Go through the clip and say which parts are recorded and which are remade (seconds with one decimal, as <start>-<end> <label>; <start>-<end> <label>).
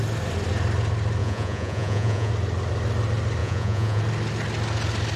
0.0-1.2 recorded; 1.2-2.3 remade; 2.3-3.4 recorded; 3.4-4.0 remade; 4.0-5.2 recorded